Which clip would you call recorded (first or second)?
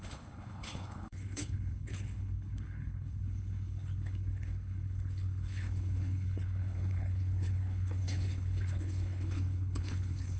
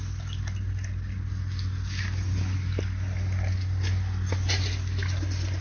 second